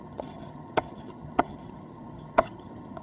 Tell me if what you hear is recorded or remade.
remade